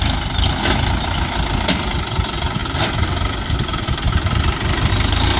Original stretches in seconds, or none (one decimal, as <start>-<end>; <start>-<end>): 0.0-2.6; 4.9-5.4